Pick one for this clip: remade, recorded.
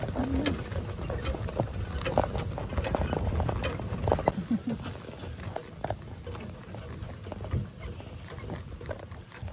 recorded